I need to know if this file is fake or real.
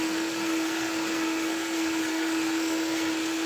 fake